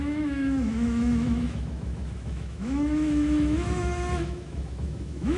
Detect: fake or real fake